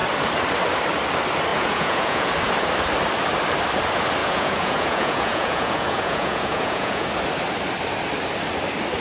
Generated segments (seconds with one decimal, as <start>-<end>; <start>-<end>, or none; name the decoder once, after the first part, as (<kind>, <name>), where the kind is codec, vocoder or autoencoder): 1.5-2.3 (vocoder, Vocos); 4.2-7.1